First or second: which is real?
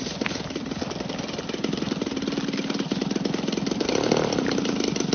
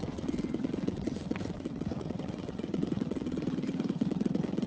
first